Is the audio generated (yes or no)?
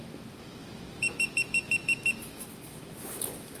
yes